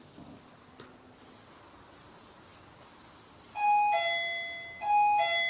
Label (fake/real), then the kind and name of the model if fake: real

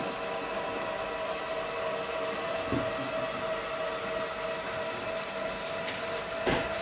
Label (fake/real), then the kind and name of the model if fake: real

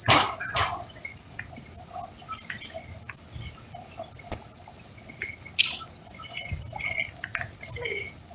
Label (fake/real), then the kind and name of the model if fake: real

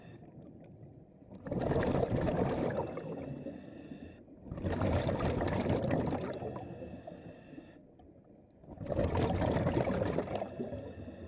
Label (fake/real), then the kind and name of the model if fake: real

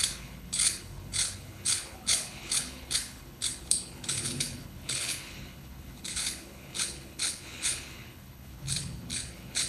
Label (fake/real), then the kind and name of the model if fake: fake, codec, HILCodec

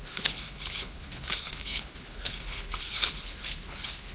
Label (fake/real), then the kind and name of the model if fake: fake, codec, HILCodec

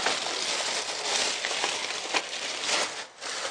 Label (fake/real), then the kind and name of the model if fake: real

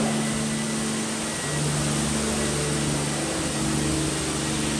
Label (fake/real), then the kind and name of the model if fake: real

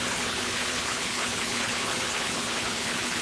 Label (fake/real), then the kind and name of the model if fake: fake, codec, HILCodec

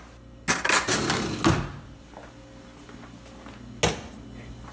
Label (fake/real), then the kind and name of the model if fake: real